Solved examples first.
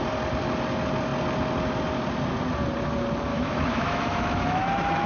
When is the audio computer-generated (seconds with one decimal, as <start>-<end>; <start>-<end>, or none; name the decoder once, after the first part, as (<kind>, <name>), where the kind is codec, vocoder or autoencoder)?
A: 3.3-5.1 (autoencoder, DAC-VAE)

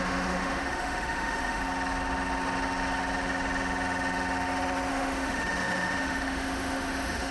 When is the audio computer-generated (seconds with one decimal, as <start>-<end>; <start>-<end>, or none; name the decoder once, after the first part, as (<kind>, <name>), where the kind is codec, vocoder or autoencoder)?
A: 0.0-1.6 (autoencoder, DAC-VAE); 4.9-7.3

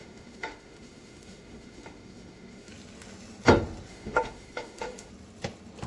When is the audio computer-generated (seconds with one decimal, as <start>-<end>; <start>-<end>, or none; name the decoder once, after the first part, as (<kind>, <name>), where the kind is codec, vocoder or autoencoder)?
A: 0.0-2.7 (autoencoder, DAC-VAE); 3.9-5.1

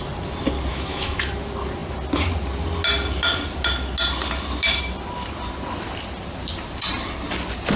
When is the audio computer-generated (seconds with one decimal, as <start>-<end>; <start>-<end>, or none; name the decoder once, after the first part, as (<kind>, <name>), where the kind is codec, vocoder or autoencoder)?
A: 0.7-1.3 (autoencoder, DAC-VAE)

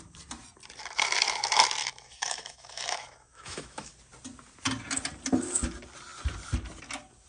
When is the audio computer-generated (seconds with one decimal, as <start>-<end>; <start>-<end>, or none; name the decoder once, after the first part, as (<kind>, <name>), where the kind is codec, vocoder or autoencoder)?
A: 1.8-3.9 (autoencoder, DAC-VAE)